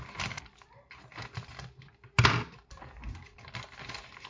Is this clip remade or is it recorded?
recorded